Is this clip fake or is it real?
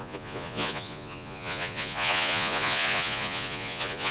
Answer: fake